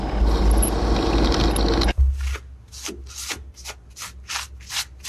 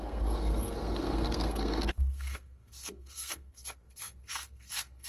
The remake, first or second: second